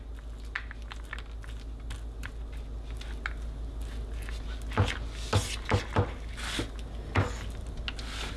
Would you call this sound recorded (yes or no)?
yes